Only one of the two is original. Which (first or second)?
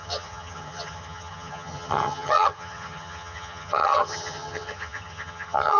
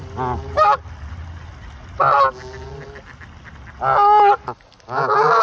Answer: second